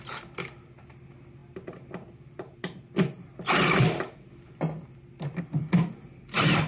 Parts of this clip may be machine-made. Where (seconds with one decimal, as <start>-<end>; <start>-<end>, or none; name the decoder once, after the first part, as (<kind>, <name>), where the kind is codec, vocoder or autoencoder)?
none